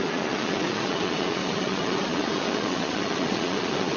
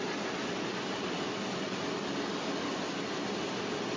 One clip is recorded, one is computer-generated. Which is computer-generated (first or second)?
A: first